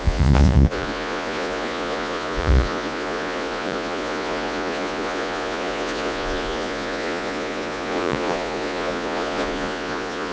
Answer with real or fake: fake